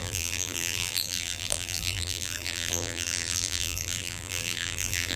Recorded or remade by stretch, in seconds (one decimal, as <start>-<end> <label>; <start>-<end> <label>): 0.0-5.2 remade